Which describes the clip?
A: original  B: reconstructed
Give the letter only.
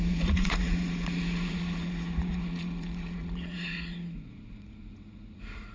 B